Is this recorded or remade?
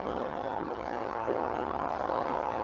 remade